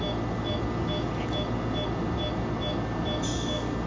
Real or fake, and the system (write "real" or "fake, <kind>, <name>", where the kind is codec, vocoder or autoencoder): real